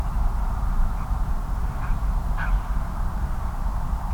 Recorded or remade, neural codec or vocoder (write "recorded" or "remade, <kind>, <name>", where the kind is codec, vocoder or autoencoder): remade, vocoder, BigVGAN v2